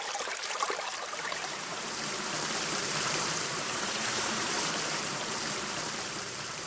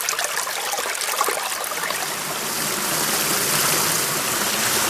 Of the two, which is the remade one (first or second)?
first